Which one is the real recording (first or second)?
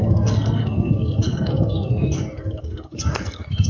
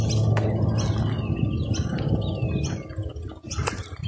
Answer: second